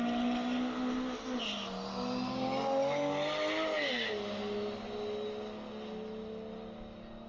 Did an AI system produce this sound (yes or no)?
no